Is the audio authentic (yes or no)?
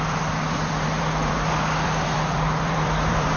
no